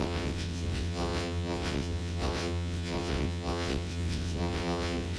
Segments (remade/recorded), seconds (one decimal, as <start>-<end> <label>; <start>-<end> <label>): 0.0-5.2 remade